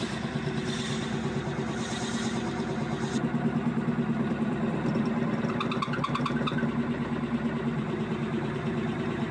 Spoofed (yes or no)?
no